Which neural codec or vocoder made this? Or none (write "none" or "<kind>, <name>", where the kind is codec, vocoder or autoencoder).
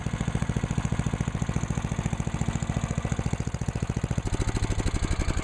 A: none